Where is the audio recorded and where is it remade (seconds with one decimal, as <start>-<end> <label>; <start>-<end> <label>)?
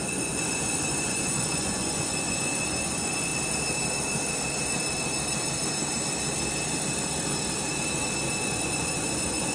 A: 0.0-3.3 remade; 3.3-8.4 recorded; 8.4-9.5 remade